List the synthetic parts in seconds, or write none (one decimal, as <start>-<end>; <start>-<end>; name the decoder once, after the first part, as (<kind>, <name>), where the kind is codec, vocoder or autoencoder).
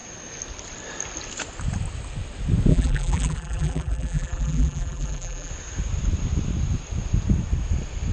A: 2.7-5.5 (vocoder, BigVGAN v2)